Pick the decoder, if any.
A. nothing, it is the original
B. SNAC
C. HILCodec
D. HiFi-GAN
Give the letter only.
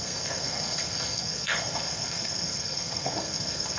B